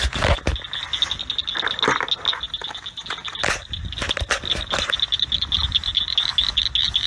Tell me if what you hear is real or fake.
real